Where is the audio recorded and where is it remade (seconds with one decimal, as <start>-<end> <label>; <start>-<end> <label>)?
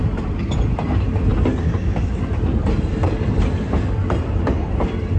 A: 0.0-5.2 recorded